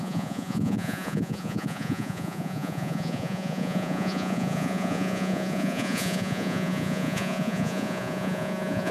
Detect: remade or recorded remade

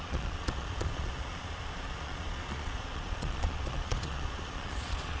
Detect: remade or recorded remade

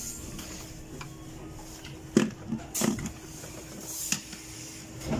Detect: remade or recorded recorded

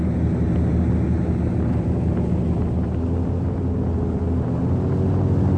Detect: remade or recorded recorded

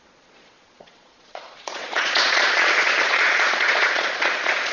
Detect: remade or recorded remade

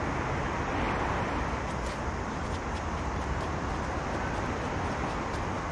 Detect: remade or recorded recorded